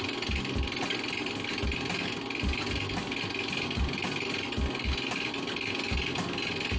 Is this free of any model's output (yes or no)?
yes